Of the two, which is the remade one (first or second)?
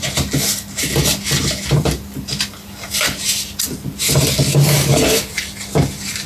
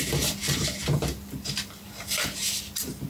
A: second